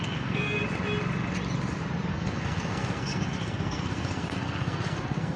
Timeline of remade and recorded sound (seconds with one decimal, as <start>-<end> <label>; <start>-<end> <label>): 0.0-0.6 remade; 0.6-2.1 recorded; 2.1-5.4 remade